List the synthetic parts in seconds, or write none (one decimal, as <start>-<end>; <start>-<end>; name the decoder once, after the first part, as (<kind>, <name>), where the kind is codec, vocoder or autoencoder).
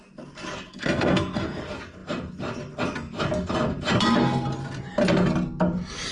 0.7-1.6 (codec, SNAC)